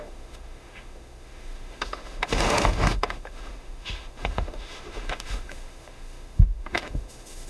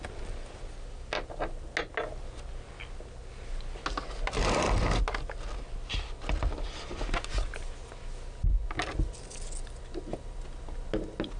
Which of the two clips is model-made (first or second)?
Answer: first